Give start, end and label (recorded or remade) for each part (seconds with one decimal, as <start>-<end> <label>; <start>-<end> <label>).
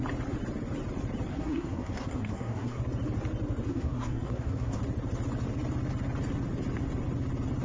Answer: 0.0-1.3 recorded; 1.3-2.8 remade; 2.8-3.7 recorded; 3.7-4.8 remade; 4.8-7.6 recorded